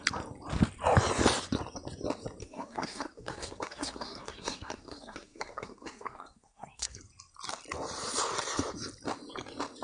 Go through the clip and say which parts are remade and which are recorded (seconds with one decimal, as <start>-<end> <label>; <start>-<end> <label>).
0.0-2.4 recorded; 2.4-7.0 remade; 7.0-9.8 recorded